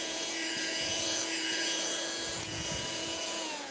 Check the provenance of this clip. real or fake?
fake